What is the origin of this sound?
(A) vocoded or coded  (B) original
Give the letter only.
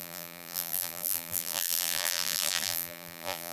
A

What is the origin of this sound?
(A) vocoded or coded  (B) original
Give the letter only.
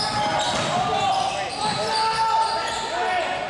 B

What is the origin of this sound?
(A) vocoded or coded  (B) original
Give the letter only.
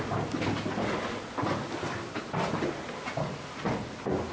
B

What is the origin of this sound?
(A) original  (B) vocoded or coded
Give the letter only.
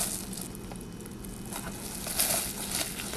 A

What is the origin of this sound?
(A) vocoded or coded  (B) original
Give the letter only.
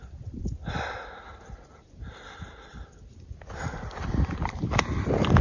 A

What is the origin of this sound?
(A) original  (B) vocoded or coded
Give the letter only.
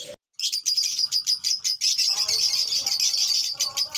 A